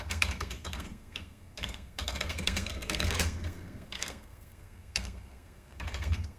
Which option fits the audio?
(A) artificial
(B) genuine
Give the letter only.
A